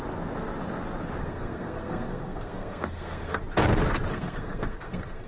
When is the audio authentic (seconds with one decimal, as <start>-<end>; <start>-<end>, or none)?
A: 0.0-1.2; 3.4-4.1

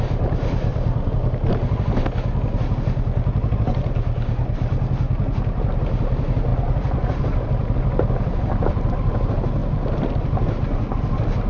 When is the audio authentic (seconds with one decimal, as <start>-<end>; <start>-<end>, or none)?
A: 0.0-0.7; 1.5-6.5; 8.9-11.5

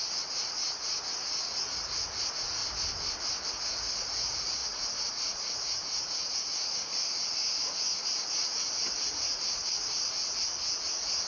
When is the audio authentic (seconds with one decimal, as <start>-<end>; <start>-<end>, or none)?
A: 2.6-3.5; 10.2-10.9

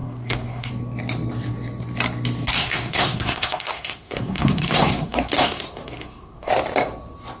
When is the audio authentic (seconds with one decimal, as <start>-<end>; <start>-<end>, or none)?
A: 0.7-2.6; 6.5-7.4

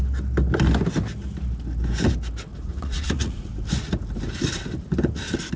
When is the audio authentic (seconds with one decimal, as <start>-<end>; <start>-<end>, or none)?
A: 0.0-2.5; 3.5-5.6